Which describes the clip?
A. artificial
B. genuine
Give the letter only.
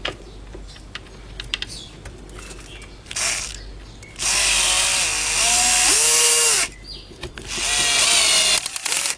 B